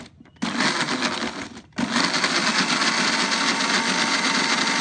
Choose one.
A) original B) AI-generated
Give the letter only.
A